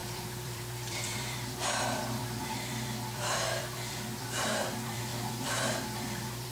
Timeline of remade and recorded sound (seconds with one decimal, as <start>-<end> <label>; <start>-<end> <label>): 0.0-6.5 remade